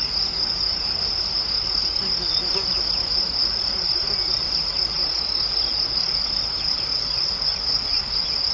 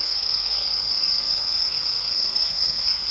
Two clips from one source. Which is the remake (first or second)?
second